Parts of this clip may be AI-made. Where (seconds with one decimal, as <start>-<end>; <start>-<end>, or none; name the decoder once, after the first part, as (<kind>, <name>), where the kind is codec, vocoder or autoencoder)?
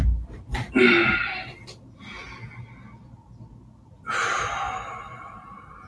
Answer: none